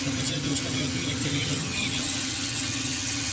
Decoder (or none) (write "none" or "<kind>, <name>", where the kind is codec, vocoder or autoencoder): vocoder, HiFi-GAN